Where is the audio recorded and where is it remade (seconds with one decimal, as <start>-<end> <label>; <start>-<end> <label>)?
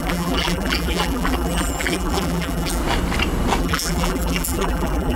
0.0-2.8 remade; 2.8-3.6 recorded; 3.6-5.2 remade